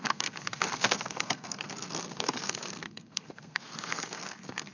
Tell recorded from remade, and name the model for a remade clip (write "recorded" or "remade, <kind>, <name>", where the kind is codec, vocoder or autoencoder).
remade, codec, SNAC